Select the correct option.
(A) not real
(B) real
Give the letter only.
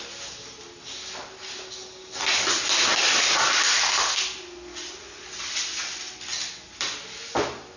B